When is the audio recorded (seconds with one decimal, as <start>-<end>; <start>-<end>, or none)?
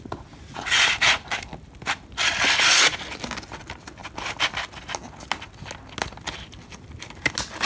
0.0-7.7